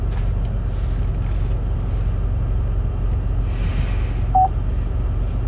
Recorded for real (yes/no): yes